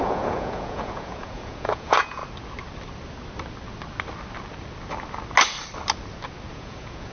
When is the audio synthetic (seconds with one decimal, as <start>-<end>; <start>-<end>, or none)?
0.0-2.2; 6.5-7.1